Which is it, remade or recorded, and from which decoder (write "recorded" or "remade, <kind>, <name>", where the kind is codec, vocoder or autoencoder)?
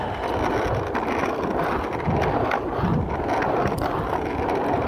recorded